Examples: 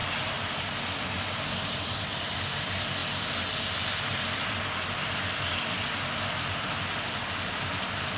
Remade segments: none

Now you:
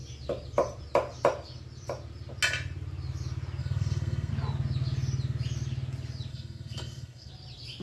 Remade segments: 3.6-4.3 (codec, SNAC); 6.3-7.3

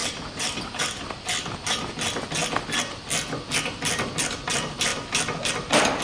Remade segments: 0.0-2.4 (vocoder, BigVGAN v2); 4.3-4.9; 5.5-6.0

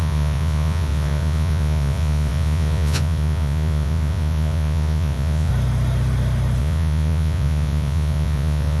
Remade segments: 0.0-5.5 (vocoder, Vocos); 6.6-8.8

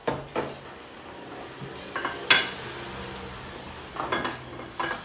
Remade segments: none